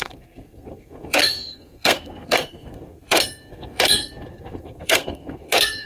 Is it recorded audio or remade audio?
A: remade